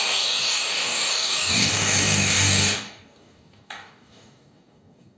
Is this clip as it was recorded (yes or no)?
no